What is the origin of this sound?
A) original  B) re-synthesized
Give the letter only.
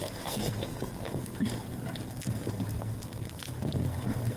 B